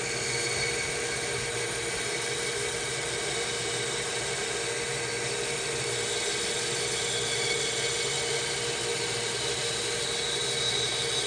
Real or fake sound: real